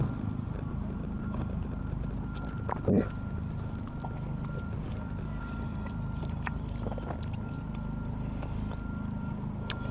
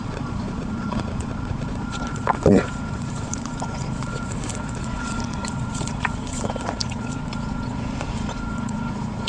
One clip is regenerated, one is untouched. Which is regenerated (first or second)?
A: second